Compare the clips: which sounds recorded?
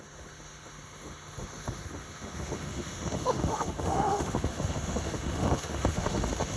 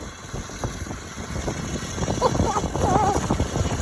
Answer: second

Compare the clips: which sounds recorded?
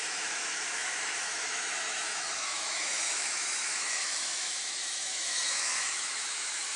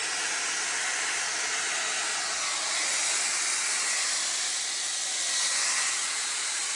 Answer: second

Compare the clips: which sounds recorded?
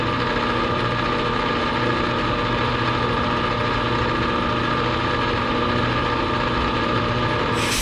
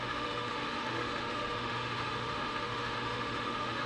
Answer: first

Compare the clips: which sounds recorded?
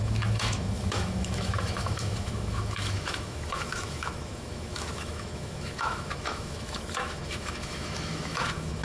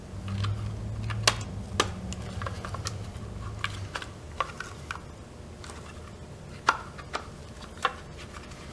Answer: second